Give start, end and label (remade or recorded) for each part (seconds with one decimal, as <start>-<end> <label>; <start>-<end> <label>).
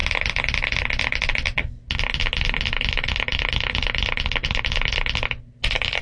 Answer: 0.0-1.6 remade; 1.6-6.0 recorded